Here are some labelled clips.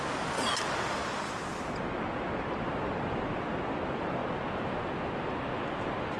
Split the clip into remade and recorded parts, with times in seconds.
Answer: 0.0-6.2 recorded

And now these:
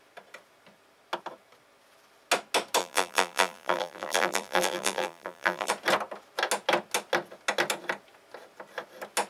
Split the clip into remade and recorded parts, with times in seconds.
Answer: 0.0-2.8 recorded; 2.8-5.7 remade; 5.7-9.3 recorded

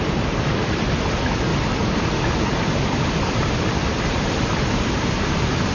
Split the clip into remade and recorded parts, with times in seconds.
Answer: 0.0-1.5 remade; 1.5-2.8 recorded; 2.8-5.7 remade

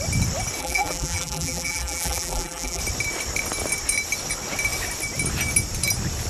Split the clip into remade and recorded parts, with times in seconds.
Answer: 0.0-0.6 recorded; 0.6-2.8 remade; 2.8-6.3 recorded

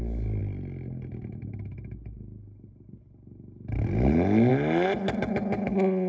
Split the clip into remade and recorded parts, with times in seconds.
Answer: 0.0-6.1 recorded

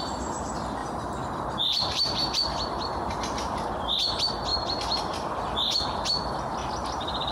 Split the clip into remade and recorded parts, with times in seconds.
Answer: 0.0-0.8 recorded; 0.8-3.8 remade; 3.8-4.5 recorded; 4.5-5.0 remade; 5.0-6.6 recorded; 6.6-7.3 remade